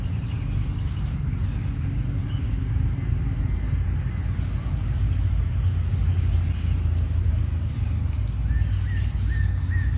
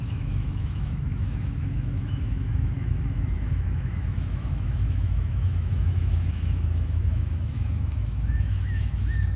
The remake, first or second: second